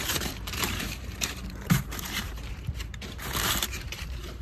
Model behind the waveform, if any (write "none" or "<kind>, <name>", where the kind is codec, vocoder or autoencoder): vocoder, BigVGAN v2